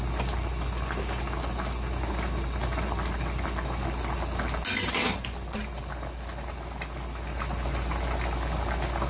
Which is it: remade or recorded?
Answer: recorded